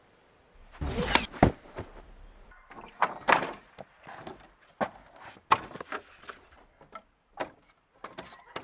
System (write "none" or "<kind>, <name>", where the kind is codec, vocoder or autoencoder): none